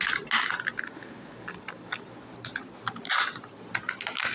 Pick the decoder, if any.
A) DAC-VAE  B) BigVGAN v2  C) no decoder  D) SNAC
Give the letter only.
C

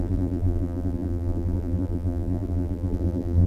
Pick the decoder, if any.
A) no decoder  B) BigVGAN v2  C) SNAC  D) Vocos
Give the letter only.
B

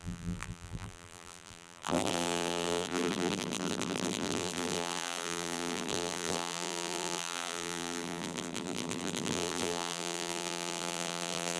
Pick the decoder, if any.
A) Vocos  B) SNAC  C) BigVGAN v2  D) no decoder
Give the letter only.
C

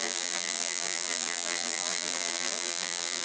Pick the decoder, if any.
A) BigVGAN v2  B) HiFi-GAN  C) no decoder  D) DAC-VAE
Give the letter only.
A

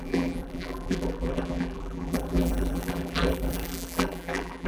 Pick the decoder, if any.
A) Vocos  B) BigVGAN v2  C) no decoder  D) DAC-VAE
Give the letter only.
B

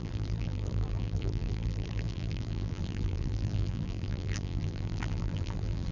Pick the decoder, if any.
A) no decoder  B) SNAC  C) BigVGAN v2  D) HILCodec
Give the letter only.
C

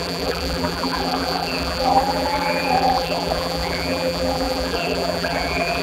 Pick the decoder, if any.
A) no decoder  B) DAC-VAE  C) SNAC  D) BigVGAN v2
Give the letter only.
D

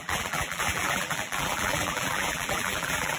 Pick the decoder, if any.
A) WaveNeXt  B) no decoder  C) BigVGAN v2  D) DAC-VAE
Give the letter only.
C